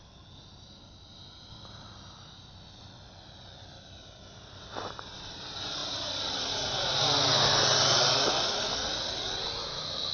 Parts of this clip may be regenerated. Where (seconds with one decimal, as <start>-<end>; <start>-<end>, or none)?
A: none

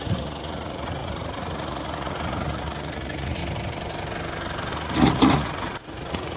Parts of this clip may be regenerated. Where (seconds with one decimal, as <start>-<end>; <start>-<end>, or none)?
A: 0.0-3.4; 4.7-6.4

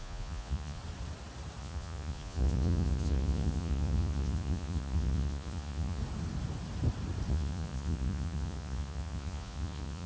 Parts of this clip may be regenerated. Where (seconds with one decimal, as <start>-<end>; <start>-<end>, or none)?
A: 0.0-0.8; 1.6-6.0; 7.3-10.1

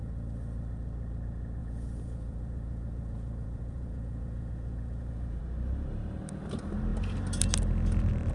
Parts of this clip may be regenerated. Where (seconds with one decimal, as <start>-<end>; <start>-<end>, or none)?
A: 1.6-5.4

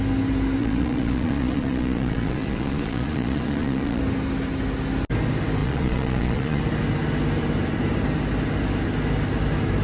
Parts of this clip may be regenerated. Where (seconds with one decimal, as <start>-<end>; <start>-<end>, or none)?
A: 0.6-4.0; 5.6-6.6

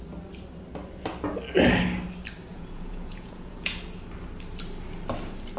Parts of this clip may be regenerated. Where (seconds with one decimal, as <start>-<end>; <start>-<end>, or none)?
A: 2.5-3.8